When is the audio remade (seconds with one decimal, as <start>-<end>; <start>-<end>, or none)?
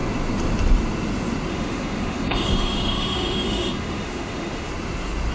1.5-4.7